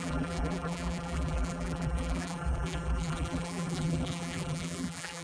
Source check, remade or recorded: remade